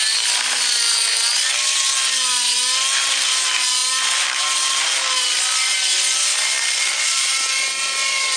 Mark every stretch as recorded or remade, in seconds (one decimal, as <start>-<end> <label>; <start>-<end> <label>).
0.0-8.4 recorded